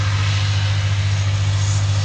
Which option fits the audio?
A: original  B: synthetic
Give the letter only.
A